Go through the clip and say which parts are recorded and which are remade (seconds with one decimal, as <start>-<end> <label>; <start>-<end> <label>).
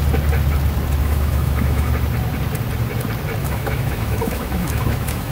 0.0-1.0 recorded; 1.0-1.9 remade; 1.9-3.4 recorded; 3.4-5.3 remade